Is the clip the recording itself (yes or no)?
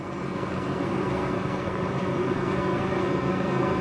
no